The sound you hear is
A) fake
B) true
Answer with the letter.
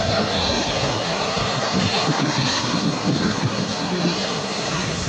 A